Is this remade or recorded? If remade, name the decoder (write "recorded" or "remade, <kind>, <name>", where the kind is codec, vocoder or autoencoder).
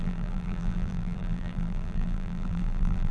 remade, vocoder, BigVGAN v2